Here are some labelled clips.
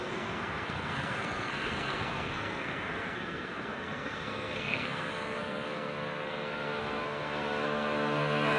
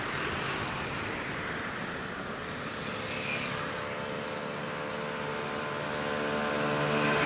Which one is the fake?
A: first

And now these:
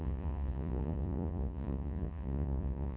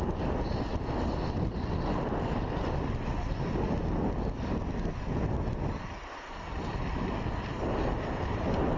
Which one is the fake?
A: first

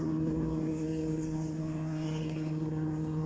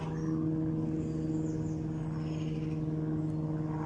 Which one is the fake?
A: first